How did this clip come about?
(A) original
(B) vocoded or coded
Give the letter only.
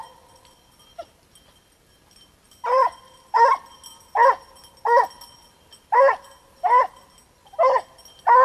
A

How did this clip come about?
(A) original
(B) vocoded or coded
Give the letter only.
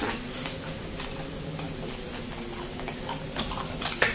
A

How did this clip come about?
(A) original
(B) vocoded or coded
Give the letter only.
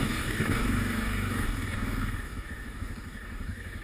B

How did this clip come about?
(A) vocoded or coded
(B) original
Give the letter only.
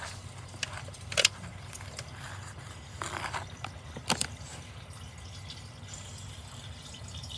B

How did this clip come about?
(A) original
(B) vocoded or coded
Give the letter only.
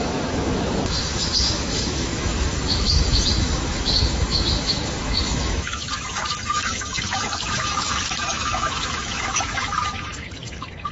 B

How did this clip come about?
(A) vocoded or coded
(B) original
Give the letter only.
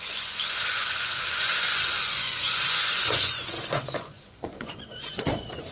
A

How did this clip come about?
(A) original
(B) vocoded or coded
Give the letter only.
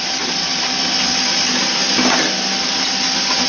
A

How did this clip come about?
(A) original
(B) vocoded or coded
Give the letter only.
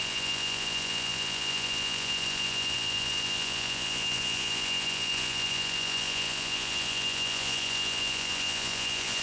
B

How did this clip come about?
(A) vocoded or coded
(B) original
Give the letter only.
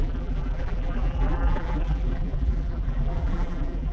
A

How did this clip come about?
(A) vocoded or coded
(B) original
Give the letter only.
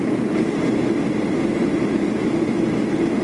B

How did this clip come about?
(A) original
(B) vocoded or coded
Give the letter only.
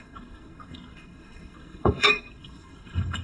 B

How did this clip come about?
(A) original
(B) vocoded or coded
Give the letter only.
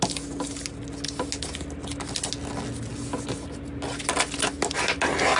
A